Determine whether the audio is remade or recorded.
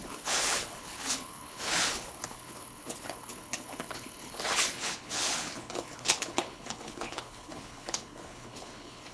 remade